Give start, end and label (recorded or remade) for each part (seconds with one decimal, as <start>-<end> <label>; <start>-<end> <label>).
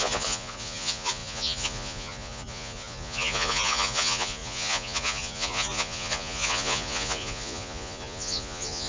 0.0-8.9 remade